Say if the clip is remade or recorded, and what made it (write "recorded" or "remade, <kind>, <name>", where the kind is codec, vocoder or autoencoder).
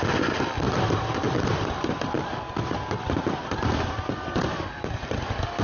recorded